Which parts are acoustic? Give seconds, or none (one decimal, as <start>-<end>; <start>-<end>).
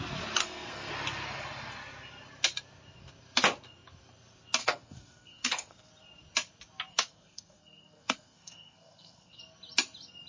0.0-0.4; 0.9-4.6; 5.9-6.9; 9.4-10.3